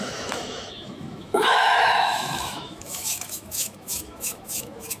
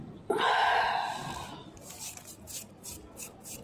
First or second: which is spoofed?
first